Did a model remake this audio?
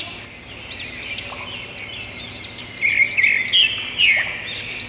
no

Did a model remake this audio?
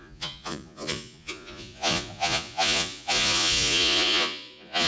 yes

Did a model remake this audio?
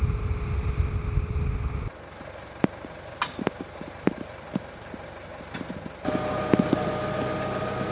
no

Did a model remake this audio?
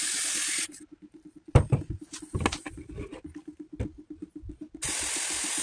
no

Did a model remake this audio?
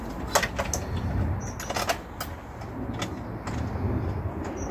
no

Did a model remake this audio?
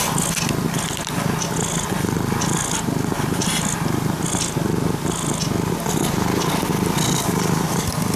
no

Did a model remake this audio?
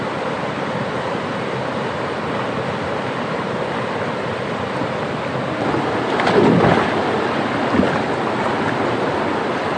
no